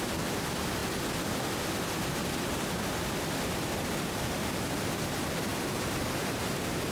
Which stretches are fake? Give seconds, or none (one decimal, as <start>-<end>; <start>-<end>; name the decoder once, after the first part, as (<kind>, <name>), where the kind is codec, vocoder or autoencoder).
5.5-6.5 (vocoder, BigVGAN v2)